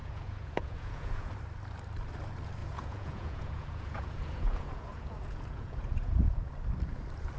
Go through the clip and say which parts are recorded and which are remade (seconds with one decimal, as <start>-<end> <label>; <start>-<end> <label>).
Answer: 0.0-1.3 remade; 1.3-2.6 recorded; 2.6-6.5 remade; 6.5-7.4 recorded